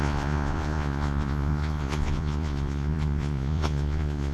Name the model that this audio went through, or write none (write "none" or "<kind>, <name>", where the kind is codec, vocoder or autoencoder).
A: vocoder, Vocos